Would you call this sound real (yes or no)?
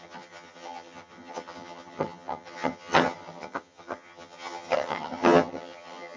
no